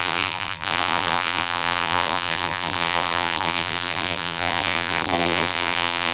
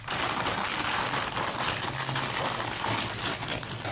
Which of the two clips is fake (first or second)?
first